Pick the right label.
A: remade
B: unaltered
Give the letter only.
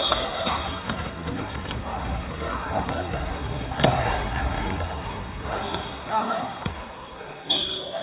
A